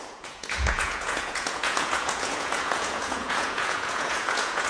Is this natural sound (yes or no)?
no